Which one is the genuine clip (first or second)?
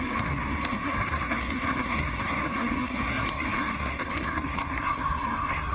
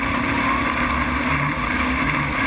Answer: second